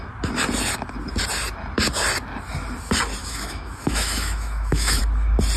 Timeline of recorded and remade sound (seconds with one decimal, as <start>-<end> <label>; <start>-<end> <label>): 0.0-3.2 recorded; 3.2-5.0 remade; 5.0-5.6 recorded